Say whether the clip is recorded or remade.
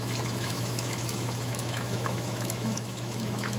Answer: remade